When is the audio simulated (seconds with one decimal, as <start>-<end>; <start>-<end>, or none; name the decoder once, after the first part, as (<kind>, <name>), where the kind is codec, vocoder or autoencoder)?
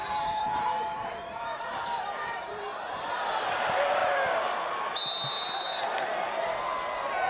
0.0-3.5 (vocoder, BigVGAN v2)